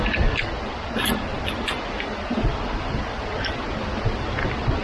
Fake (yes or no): no